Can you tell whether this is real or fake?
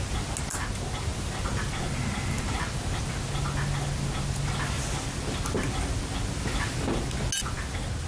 real